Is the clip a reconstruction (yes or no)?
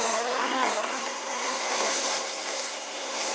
yes